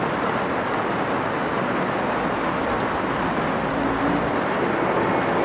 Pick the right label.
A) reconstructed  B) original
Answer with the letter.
B